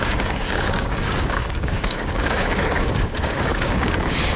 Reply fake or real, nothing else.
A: fake